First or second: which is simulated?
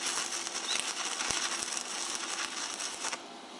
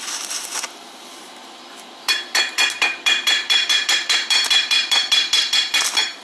second